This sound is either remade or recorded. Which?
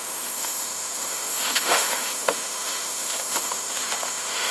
remade